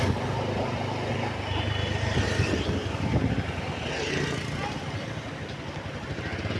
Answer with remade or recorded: recorded